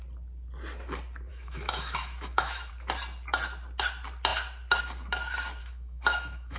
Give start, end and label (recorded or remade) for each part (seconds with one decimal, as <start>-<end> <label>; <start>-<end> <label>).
0.0-1.3 recorded; 1.3-2.7 remade; 2.7-5.6 recorded; 5.6-6.6 remade